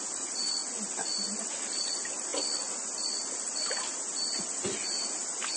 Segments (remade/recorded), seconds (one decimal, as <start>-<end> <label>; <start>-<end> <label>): 0.0-5.6 recorded